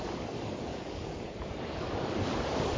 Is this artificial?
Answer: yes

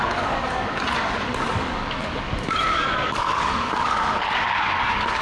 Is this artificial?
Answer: yes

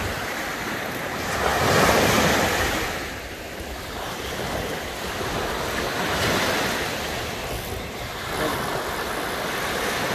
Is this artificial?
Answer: no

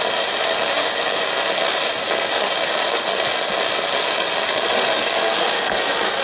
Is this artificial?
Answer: no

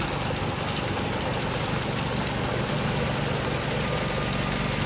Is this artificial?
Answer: no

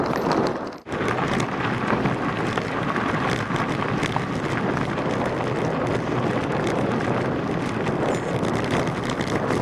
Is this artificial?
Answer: no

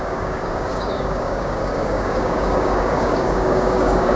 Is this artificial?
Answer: yes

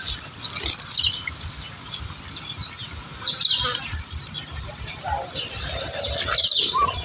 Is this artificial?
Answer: no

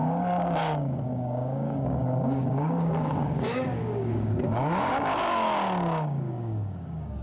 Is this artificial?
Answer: yes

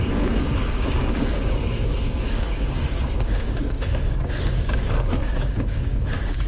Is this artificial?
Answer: yes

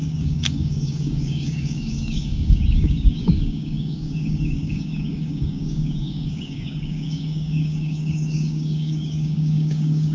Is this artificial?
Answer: yes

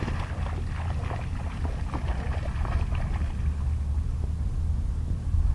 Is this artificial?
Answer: no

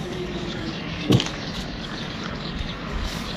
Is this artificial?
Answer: yes